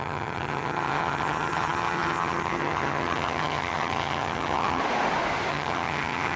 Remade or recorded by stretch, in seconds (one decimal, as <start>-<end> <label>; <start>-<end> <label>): 0.0-4.8 remade; 4.8-5.5 recorded; 5.5-6.4 remade